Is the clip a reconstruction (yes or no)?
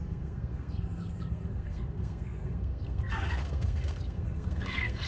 yes